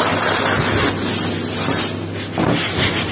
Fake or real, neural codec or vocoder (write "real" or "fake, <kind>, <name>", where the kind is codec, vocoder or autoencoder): real